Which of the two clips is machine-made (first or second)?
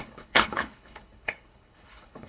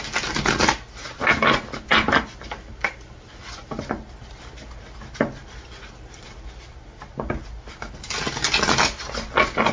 first